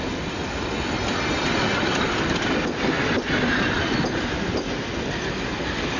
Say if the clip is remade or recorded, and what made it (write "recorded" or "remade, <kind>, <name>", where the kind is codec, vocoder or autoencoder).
recorded